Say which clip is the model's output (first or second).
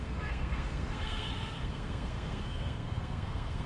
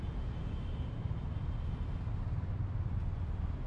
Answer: first